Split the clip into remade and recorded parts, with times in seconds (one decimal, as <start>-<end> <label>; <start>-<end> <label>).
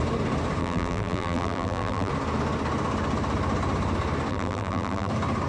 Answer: 0.0-0.6 recorded; 0.6-2.1 remade; 2.1-4.3 recorded; 4.3-5.1 remade; 5.1-5.5 recorded